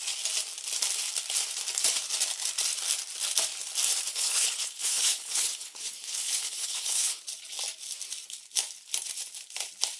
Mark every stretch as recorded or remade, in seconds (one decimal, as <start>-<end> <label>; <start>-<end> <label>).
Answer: 0.0-4.1 recorded; 4.1-7.2 remade; 7.2-10.0 recorded